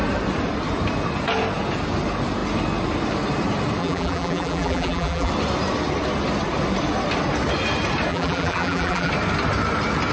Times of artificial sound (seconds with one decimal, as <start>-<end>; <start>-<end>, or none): 3.8-5.3; 8.1-9.1